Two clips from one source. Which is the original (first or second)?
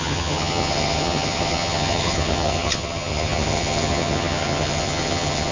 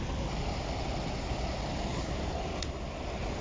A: second